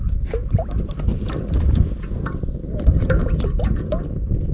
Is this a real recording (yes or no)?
yes